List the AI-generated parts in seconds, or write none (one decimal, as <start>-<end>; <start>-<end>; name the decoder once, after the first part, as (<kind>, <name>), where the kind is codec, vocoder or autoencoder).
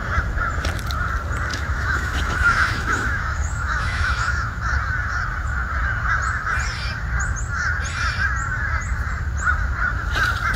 1.5-4.6 (autoencoder, DAC-VAE)